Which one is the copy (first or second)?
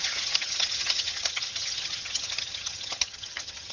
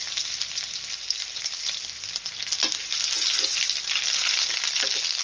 first